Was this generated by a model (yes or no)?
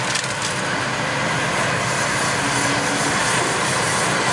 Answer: no